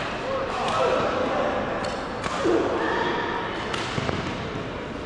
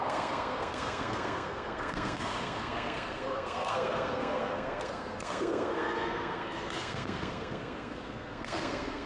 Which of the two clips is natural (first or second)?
first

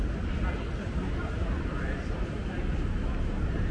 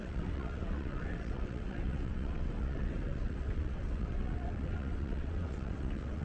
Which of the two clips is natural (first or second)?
first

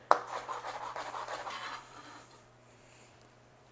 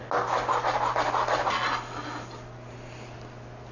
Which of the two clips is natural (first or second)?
second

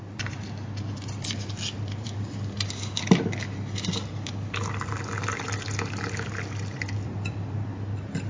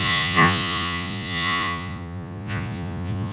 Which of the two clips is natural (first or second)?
first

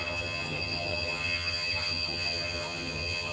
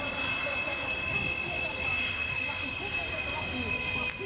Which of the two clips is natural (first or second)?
second